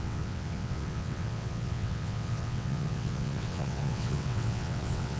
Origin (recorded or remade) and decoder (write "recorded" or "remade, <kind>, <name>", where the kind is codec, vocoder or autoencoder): remade, vocoder, WaveNeXt